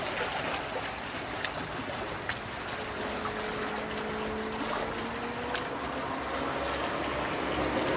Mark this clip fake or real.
real